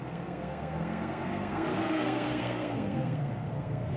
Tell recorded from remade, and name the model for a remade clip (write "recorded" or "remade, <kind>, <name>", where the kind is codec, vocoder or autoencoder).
remade, codec, SNAC